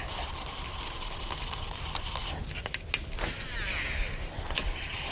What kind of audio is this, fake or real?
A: real